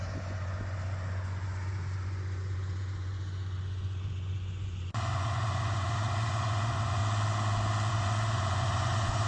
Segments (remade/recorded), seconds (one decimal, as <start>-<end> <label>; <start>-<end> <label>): 0.0-7.0 remade; 7.0-7.9 recorded; 7.9-9.3 remade